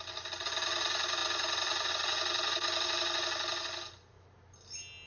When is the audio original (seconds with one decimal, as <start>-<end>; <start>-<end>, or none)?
0.0-1.2; 1.9-5.1